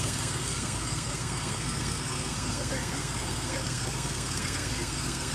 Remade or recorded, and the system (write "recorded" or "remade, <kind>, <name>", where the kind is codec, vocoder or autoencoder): remade, codec, SNAC